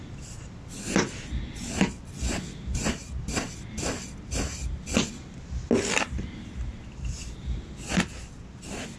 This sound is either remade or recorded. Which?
recorded